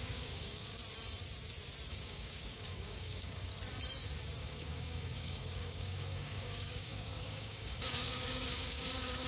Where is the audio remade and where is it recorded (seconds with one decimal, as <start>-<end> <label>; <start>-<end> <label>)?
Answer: 0.0-0.8 remade; 0.8-1.9 recorded; 1.9-3.5 remade; 3.5-4.4 recorded; 4.4-9.3 remade

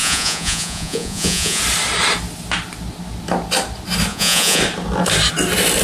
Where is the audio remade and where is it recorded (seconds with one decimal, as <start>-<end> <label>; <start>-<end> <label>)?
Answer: 0.0-1.6 remade; 1.6-4.1 recorded; 4.1-4.6 remade; 4.6-5.8 recorded

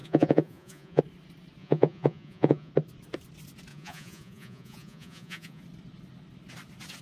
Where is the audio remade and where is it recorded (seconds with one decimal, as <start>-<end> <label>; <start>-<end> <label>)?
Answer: 0.0-1.0 remade; 1.0-1.6 recorded; 1.6-2.7 remade; 2.7-3.7 recorded; 3.7-5.6 remade; 5.6-7.0 recorded